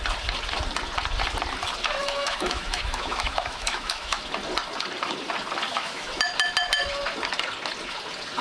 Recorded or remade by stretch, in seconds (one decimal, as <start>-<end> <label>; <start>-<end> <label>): 0.0-2.0 recorded; 2.0-4.2 remade; 4.2-5.7 recorded; 5.7-6.2 remade; 6.2-8.4 recorded